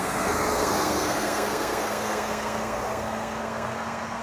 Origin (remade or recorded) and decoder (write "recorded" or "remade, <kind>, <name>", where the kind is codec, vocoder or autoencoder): remade, codec, SNAC